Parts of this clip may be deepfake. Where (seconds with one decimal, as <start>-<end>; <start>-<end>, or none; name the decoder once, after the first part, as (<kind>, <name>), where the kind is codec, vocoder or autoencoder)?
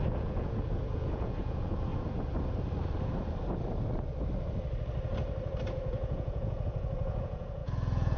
0.0-1.9 (vocoder, Vocos); 5.7-8.2